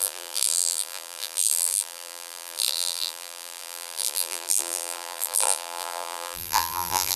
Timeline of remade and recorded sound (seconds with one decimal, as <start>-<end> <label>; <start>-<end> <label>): 0.0-7.2 remade